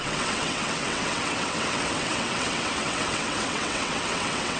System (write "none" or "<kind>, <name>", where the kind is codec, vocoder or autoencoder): vocoder, WaveNeXt